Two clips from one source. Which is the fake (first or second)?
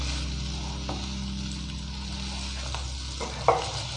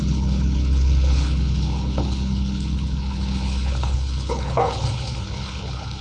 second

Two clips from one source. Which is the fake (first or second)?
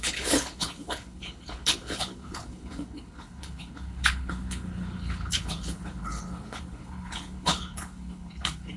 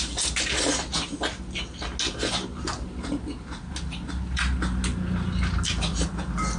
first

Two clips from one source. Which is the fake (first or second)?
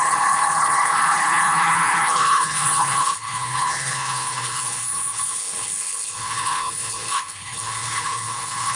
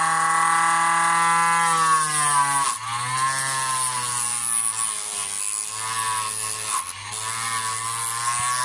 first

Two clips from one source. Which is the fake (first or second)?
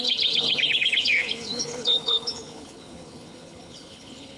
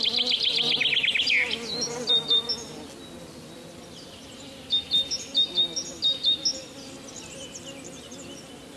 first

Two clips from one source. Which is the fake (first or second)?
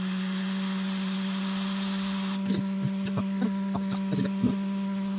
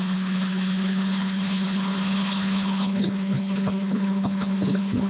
second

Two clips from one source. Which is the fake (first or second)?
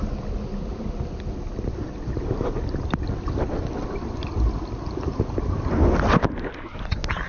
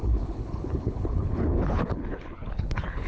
second